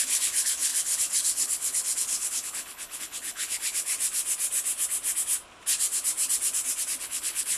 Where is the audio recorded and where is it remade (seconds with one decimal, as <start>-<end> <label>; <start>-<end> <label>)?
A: 0.0-3.9 remade; 3.9-7.0 recorded; 7.0-7.6 remade